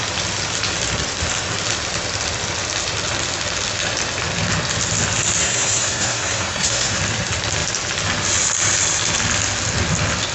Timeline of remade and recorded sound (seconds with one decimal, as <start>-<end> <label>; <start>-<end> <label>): 0.0-5.4 recorded; 5.4-7.0 remade; 7.0-10.3 recorded